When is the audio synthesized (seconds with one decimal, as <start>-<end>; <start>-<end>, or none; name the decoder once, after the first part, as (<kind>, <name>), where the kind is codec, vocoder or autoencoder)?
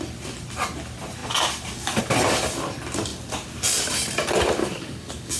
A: 4.6-5.4 (codec, DAC)